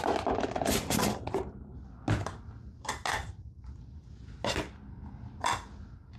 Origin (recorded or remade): recorded